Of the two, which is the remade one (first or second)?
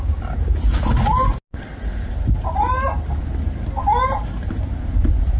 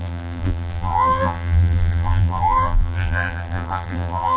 second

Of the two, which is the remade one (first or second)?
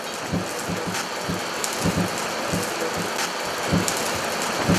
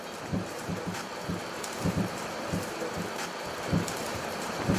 second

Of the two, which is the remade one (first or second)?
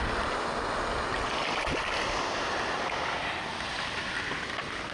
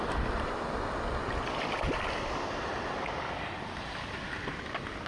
second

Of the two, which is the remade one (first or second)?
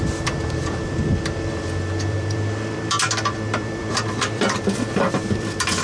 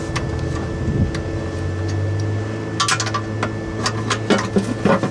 first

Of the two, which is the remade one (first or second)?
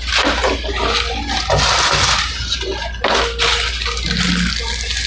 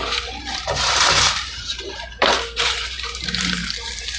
second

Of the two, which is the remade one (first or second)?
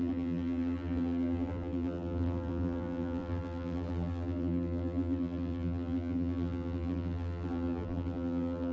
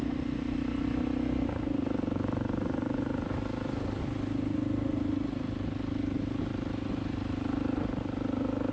first